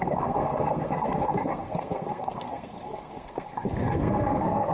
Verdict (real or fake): fake